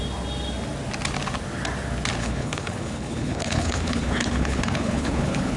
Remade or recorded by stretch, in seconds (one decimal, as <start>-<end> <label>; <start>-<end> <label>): 0.0-2.2 recorded; 2.2-5.6 remade

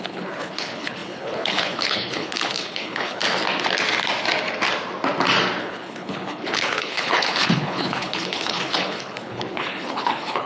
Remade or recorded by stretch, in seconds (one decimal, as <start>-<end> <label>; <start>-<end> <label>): 0.0-3.2 remade; 3.2-5.6 recorded; 5.6-10.5 remade